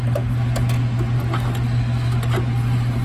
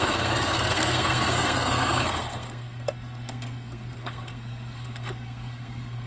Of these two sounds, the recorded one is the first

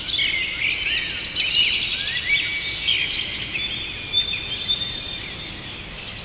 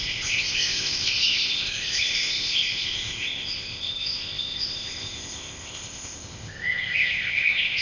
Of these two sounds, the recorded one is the first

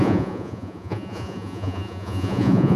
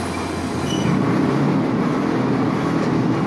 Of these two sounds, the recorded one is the second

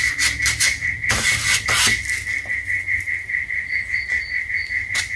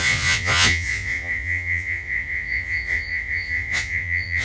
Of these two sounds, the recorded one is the first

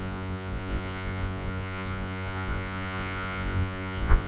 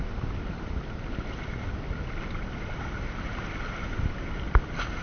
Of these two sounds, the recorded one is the second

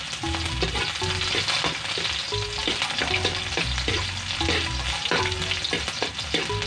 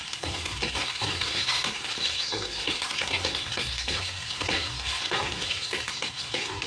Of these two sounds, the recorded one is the first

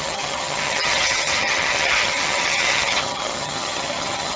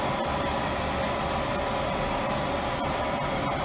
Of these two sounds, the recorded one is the second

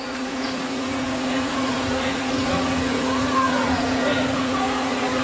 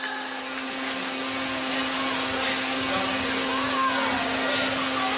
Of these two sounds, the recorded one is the second